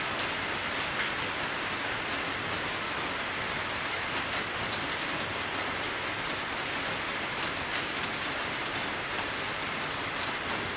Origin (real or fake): real